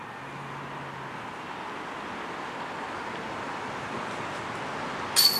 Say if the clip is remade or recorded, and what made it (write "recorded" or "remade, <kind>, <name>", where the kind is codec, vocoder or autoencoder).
recorded